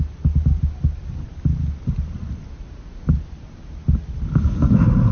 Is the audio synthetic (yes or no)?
no